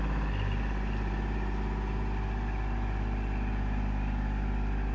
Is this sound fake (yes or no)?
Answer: no